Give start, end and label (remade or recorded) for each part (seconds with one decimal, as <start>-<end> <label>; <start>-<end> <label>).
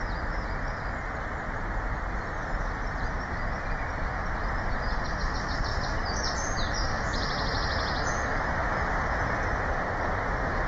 0.0-10.7 remade